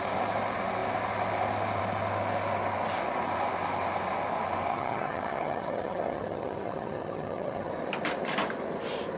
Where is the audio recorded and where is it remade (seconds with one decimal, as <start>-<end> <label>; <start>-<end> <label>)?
0.0-4.7 recorded; 4.7-7.7 remade; 7.7-9.2 recorded